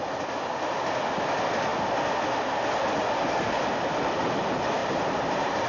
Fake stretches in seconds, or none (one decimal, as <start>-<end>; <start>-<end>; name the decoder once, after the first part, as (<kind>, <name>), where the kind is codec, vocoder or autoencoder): 4.8-5.7 (vocoder, BigVGAN v2)